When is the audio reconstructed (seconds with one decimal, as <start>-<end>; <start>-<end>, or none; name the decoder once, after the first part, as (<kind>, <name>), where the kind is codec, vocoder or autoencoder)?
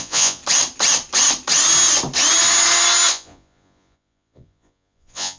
0.0-0.4 (vocoder, Vocos); 3.1-5.4